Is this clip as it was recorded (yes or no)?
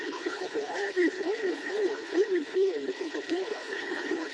no